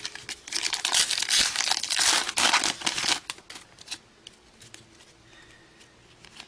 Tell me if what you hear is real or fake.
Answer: real